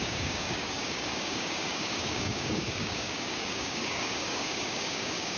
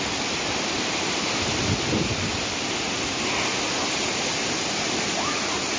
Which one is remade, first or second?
first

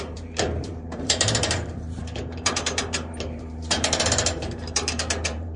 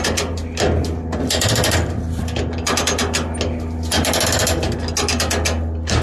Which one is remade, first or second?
first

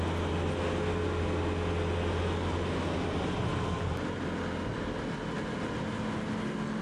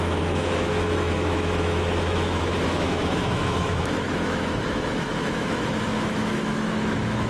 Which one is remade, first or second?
second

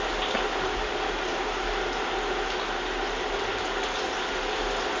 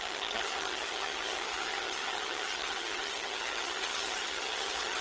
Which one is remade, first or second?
second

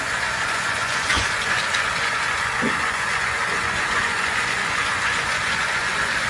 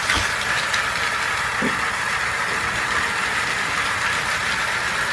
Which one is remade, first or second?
first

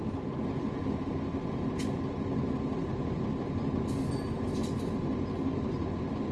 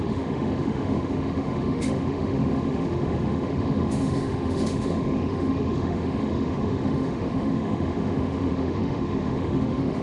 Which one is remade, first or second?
second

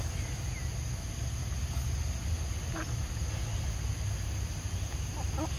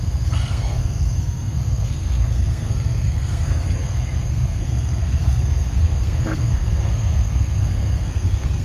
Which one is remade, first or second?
second